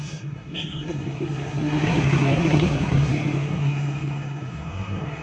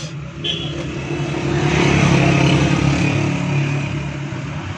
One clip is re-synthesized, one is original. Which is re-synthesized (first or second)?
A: first